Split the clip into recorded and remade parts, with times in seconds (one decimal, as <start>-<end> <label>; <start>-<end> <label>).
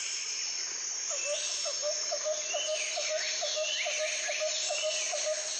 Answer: 0.0-5.6 recorded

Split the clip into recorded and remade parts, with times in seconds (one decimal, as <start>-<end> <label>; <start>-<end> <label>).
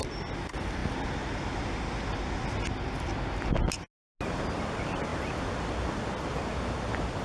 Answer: 0.0-7.2 recorded